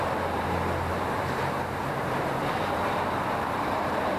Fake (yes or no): yes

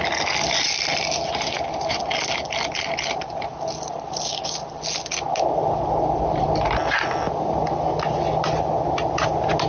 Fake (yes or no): no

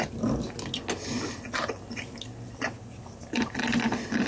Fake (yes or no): no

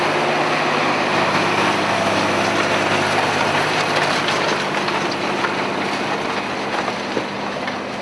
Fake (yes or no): no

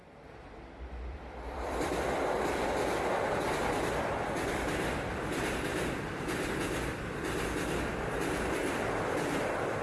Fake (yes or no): yes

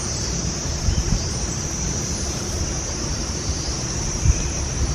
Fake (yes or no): yes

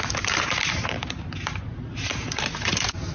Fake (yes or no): yes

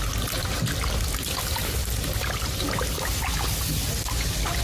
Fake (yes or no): no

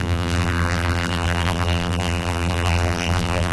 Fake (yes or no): yes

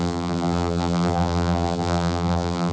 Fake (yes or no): yes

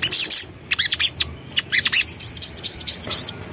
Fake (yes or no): no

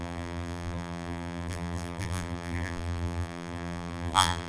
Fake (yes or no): yes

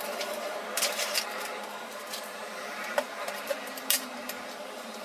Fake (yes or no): yes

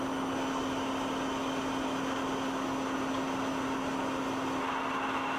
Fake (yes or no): no